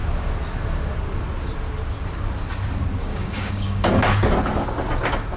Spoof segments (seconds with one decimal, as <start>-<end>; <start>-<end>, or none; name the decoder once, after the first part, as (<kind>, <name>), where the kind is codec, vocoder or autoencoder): 3.0-4.0 (codec, DAC)